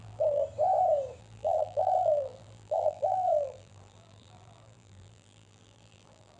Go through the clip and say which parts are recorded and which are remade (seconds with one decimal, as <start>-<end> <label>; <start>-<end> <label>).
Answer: 0.0-0.4 remade; 0.4-1.2 recorded; 1.2-6.4 remade